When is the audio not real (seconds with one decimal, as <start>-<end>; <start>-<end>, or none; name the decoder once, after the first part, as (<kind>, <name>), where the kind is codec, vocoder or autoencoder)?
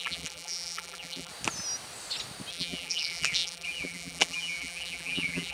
0.0-1.3 (vocoder, BigVGAN v2); 2.5-5.5